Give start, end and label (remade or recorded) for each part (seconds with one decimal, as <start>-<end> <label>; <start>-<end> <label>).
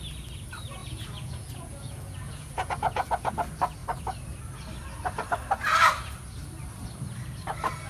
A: 0.0-0.8 recorded; 0.8-3.3 remade; 3.3-7.9 recorded